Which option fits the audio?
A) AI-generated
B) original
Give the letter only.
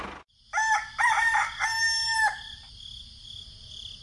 B